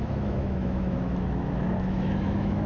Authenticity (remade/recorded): remade